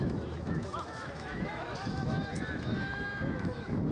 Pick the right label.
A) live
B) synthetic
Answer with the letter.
B